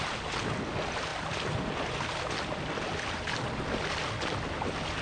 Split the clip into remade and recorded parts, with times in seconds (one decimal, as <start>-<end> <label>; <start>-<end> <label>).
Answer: 0.0-5.0 recorded